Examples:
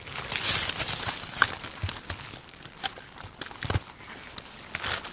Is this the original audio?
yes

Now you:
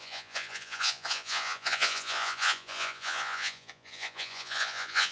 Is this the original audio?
no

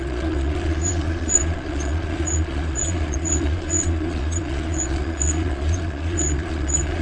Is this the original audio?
no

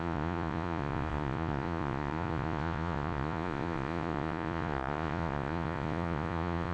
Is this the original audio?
no